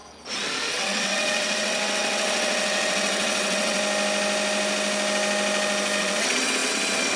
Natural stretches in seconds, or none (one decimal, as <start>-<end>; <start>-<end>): 0.0-0.7; 3.8-6.0